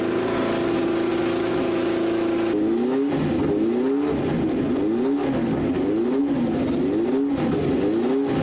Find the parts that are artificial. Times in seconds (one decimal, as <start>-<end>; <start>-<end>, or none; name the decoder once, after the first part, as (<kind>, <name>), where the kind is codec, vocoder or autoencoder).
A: 1.1-3.1 (autoencoder, DAC-VAE)